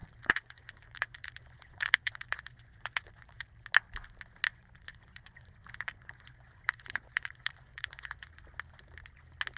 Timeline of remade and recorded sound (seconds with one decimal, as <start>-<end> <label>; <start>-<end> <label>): 0.0-3.5 remade; 3.5-4.5 recorded; 4.5-8.3 remade; 8.3-9.6 recorded